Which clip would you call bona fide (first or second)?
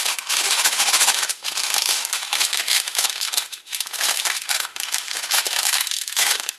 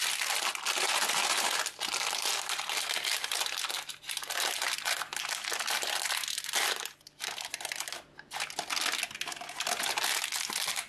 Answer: second